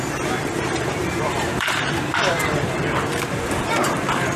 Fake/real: fake